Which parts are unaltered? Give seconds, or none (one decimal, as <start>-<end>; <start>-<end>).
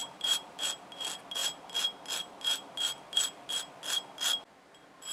0.6-5.1